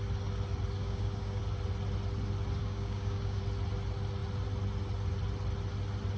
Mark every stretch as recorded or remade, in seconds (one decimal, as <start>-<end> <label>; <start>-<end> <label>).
0.0-0.8 recorded; 0.8-1.4 remade; 1.4-2.6 recorded; 2.6-3.4 remade; 3.4-6.2 recorded